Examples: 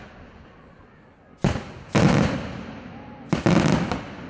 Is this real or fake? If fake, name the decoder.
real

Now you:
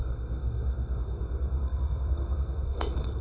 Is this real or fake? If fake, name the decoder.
fake, codec, SNAC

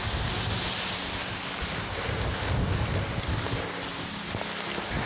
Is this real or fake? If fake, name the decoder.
real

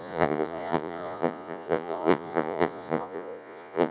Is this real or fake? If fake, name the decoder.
fake, vocoder, Vocos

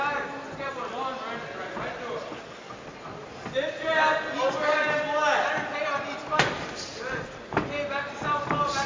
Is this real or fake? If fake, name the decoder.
real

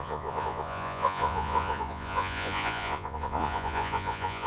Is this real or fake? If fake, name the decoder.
fake, vocoder, Vocos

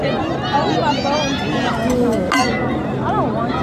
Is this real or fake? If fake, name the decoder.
real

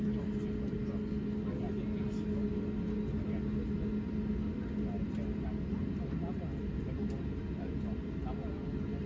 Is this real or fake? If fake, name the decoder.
real